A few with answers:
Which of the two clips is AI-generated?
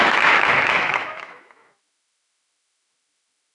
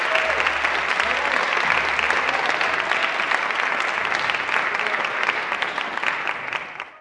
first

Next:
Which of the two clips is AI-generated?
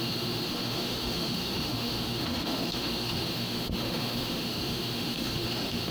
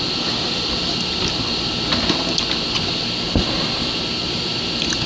first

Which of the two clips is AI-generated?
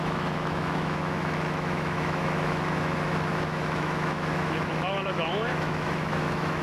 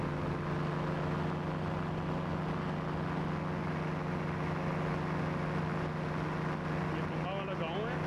first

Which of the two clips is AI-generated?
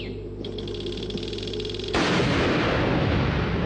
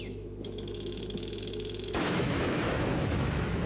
second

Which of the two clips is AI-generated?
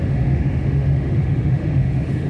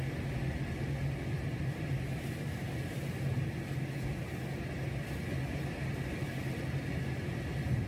first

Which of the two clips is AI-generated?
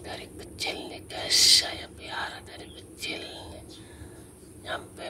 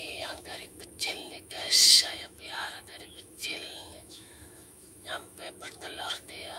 second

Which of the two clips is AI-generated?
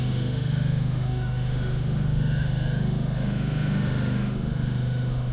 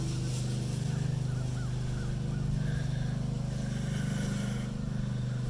first